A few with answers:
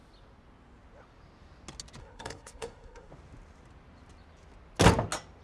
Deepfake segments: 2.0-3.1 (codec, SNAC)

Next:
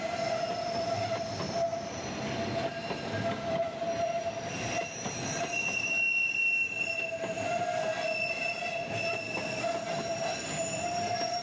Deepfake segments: none

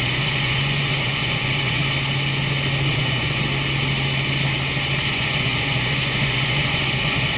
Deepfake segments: 0.0-1.8 (vocoder, Vocos); 2.9-3.5; 5.1-7.4

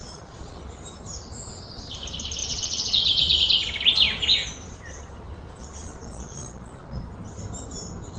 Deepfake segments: 0.0-0.6 (vocoder, Vocos); 2.4-3.4; 5.6-7.0

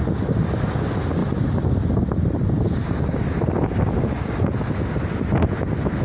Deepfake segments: none

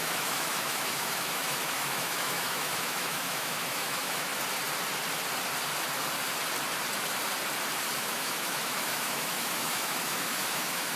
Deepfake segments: 0.0-4.3 (autoencoder, DAC-VAE); 8.0-11.0

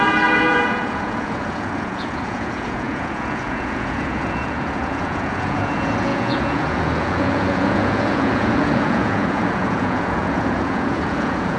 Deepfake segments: 0.0-11.6 (vocoder, Vocos)

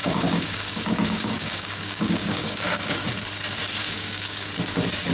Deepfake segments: 0.0-3.1 (codec, DAC); 3.8-4.5